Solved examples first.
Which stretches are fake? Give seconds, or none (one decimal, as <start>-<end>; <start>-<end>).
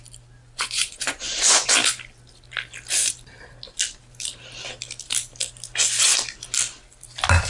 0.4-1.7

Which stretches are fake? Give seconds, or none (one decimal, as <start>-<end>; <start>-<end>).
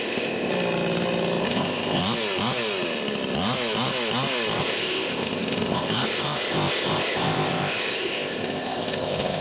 0.0-0.5; 1.4-2.0; 4.6-9.4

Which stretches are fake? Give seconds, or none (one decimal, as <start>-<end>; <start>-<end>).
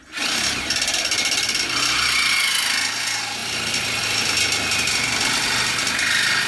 none